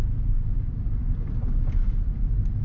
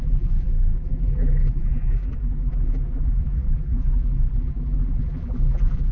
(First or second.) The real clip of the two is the first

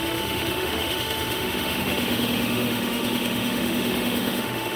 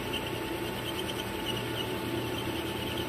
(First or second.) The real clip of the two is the second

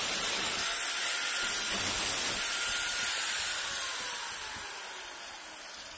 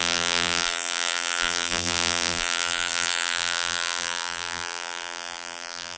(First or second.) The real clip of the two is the first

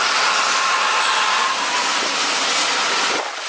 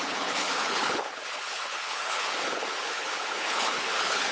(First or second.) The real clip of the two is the first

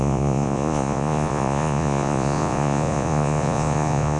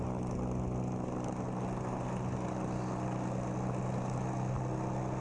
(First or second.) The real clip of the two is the second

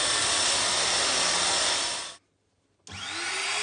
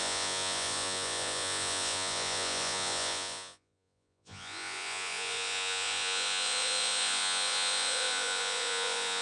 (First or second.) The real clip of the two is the first